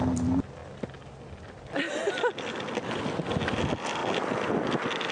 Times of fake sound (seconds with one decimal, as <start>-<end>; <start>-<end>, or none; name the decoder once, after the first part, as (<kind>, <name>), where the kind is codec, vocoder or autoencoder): none